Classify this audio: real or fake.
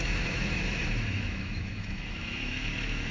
fake